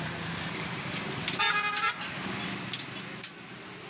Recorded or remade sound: recorded